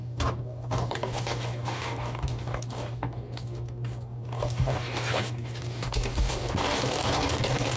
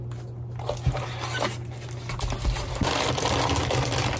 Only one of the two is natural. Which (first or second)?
second